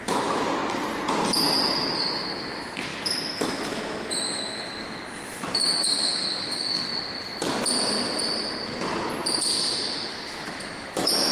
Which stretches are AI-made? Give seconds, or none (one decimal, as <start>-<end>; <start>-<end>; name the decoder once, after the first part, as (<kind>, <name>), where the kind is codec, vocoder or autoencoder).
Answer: 0.0-0.6 (autoencoder, DAC-VAE); 2.1-6.9; 10.1-11.3